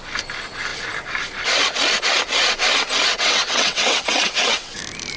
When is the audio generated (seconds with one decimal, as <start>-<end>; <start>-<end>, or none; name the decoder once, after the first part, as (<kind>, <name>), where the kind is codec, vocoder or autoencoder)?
3.1-4.8 (vocoder, WaveNeXt)